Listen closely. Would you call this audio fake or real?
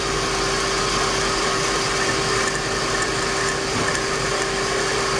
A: real